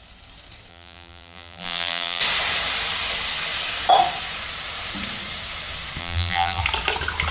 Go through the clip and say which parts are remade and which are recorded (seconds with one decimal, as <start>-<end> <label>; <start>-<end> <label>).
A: 0.0-0.7 recorded; 0.7-2.2 remade; 2.2-6.0 recorded; 6.0-6.6 remade; 6.6-7.3 recorded